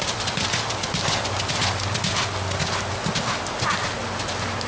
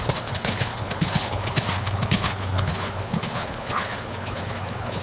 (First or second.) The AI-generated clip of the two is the second